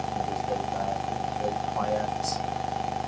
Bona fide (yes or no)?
yes